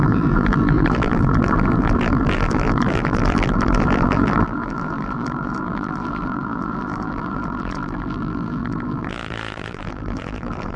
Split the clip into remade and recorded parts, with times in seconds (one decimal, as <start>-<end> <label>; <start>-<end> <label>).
0.0-10.8 remade